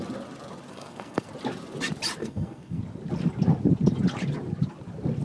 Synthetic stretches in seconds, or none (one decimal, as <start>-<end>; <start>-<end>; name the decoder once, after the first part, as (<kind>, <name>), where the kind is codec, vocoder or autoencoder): 0.7-1.3 (codec, SNAC); 2.2-2.8